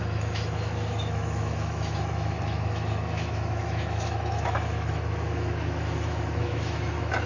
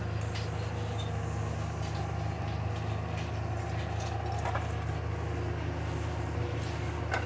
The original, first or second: second